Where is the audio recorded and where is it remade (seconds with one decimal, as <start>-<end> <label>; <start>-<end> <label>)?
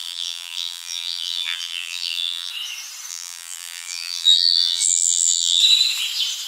0.0-2.5 remade; 2.5-3.1 recorded; 3.1-5.6 remade; 5.6-6.5 recorded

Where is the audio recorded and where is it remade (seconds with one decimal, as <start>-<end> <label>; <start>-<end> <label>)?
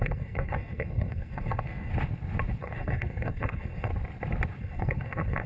0.0-1.9 remade; 1.9-2.6 recorded; 2.6-3.9 remade; 3.9-4.6 recorded; 4.6-5.5 remade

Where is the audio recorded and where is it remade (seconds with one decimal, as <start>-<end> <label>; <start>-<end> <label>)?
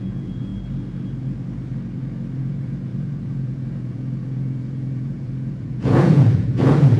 0.0-0.5 remade; 0.5-2.4 recorded; 2.4-7.0 remade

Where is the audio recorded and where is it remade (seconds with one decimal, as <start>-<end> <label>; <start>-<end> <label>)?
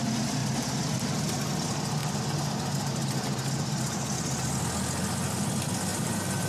0.0-0.4 recorded; 0.4-0.9 remade; 0.9-5.9 recorded; 5.9-6.5 remade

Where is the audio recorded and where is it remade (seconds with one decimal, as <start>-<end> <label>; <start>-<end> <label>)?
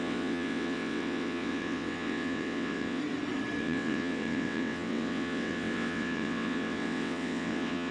0.0-3.0 remade; 3.0-3.6 recorded; 3.6-7.9 remade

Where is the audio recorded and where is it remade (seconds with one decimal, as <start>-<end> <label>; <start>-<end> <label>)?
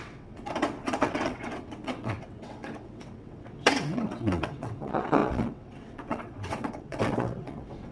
0.0-7.9 remade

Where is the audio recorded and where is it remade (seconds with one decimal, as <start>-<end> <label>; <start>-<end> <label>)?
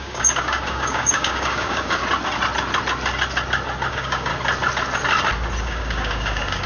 0.0-2.0 remade; 2.0-3.9 recorded; 3.9-4.3 remade; 4.3-5.6 recorded; 5.6-6.7 remade